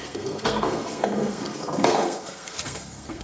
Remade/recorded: remade